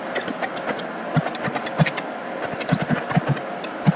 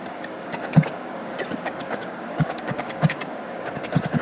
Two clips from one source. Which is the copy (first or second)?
second